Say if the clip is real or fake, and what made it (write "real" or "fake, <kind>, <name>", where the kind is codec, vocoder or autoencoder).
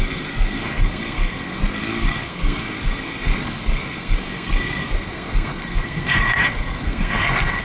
fake, codec, SNAC